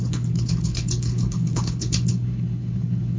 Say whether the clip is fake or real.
fake